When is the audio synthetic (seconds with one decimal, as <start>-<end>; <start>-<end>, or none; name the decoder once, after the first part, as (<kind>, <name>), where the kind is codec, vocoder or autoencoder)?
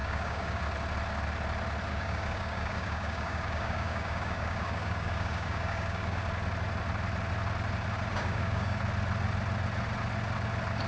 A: 0.0-0.6 (codec, DAC); 1.9-6.2; 8.1-8.8